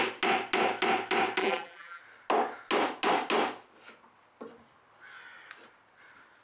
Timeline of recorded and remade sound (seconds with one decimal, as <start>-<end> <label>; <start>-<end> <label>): 0.0-1.4 recorded; 1.4-2.0 remade; 2.0-6.4 recorded